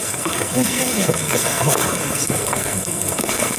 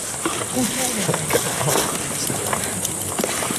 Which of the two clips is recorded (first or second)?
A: second